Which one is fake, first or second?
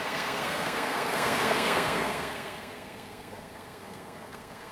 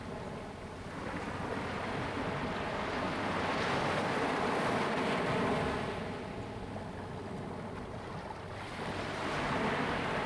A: first